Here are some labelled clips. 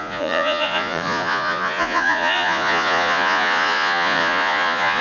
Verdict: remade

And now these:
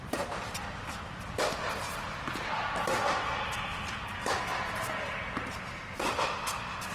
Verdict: recorded